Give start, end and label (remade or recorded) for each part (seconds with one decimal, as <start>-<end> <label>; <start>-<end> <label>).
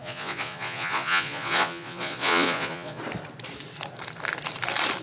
0.0-3.0 remade; 3.0-5.0 recorded